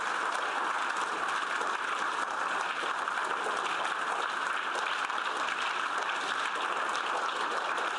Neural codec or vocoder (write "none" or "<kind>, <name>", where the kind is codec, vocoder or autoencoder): vocoder, BigVGAN v2